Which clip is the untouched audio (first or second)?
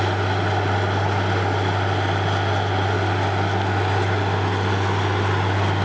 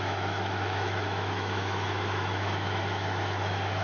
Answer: first